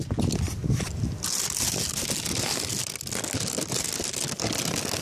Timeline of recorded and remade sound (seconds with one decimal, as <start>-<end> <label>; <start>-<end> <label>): 0.0-5.0 recorded